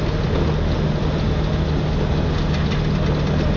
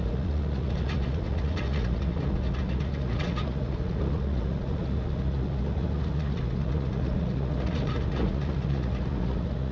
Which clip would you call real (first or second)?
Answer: first